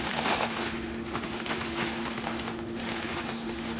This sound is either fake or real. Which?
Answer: fake